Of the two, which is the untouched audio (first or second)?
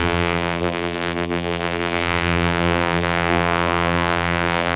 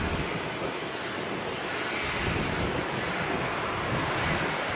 second